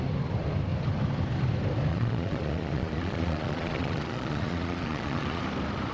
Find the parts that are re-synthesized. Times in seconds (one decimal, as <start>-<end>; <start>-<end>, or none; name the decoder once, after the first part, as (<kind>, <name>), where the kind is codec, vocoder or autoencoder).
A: 1.9-5.4 (vocoder, Vocos)